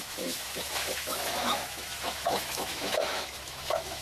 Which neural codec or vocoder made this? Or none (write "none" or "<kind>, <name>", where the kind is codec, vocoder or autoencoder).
autoencoder, DAC-VAE